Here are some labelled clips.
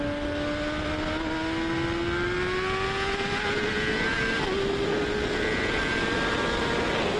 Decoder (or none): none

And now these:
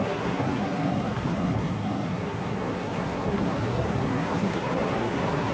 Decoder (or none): codec, SNAC